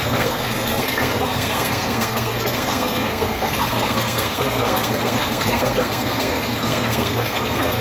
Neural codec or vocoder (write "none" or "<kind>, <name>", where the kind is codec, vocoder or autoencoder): codec, SNAC